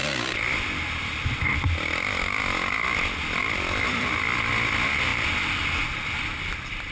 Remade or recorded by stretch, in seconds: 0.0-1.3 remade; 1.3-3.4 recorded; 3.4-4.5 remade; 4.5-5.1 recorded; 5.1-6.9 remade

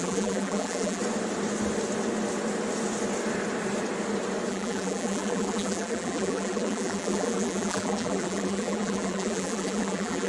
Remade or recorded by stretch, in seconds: 0.0-1.0 remade; 1.0-4.5 recorded; 4.5-10.3 remade

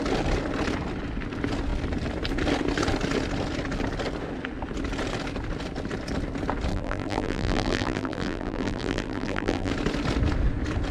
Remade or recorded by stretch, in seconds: 0.0-6.7 recorded; 6.7-9.7 remade; 9.7-10.9 recorded

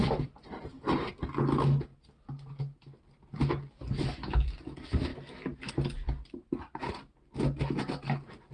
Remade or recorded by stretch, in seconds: 0.0-1.1 remade; 1.1-5.1 recorded; 5.1-5.7 remade; 5.7-8.5 recorded

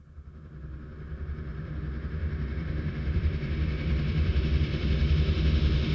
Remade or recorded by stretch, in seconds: 0.0-1.5 recorded; 1.5-5.0 remade; 5.0-5.9 recorded